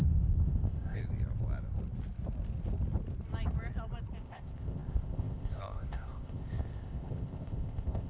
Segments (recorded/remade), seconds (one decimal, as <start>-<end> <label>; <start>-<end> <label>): 0.0-1.0 remade; 1.0-4.2 recorded; 4.2-8.1 remade

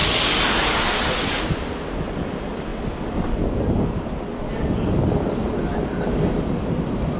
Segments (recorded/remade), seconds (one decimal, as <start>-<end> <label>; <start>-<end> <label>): 0.0-7.2 recorded

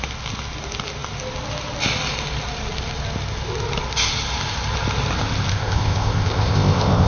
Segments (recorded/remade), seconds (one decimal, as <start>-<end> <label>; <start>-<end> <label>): 0.0-5.5 recorded; 5.5-7.1 remade

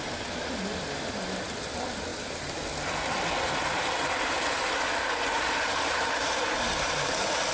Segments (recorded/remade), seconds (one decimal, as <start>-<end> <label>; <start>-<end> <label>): 0.0-7.5 recorded

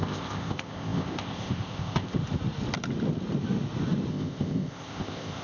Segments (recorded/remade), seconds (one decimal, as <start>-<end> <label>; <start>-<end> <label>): 0.0-2.2 remade; 2.2-4.1 recorded; 4.1-5.4 remade

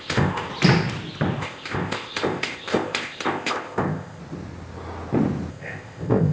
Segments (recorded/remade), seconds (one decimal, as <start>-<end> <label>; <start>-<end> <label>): 0.0-0.5 remade; 0.5-1.4 recorded; 1.4-4.2 remade; 4.2-5.5 recorded; 5.5-6.3 remade

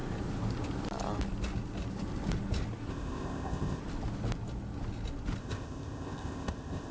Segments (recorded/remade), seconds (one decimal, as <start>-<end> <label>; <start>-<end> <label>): 0.0-2.9 recorded; 2.9-3.8 remade; 3.8-5.4 recorded; 5.4-6.9 remade